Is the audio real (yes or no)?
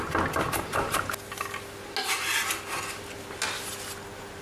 yes